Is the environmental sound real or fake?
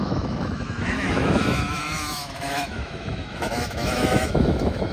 fake